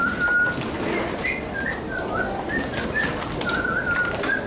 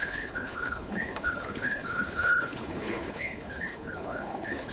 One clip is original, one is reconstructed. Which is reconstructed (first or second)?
second